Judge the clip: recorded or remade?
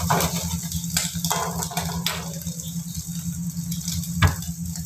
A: recorded